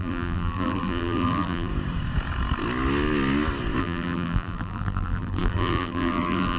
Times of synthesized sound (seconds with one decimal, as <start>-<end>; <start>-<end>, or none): 0.0-1.7; 3.8-6.6